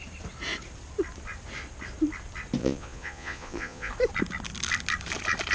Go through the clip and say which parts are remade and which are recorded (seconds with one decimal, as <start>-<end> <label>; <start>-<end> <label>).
0.0-2.6 recorded; 2.6-3.9 remade; 3.9-5.5 recorded